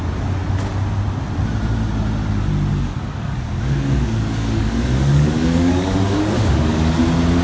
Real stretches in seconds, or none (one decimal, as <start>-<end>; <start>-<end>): 0.0-2.7; 7.0-7.4